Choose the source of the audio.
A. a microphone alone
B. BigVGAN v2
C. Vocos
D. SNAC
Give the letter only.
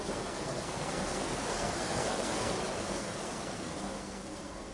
D